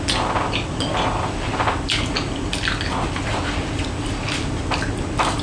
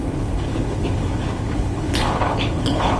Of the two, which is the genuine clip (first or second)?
first